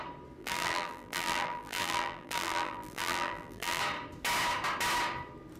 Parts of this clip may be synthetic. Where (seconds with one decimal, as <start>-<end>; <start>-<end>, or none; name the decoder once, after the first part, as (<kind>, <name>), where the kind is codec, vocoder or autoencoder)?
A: 0.4-3.8 (vocoder, BigVGAN v2)